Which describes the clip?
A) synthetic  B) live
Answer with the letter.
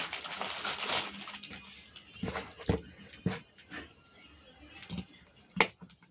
B